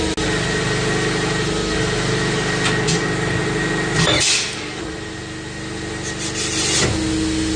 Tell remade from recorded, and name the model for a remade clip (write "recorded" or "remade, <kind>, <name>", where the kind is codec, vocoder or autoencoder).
recorded